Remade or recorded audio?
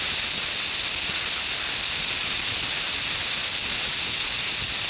recorded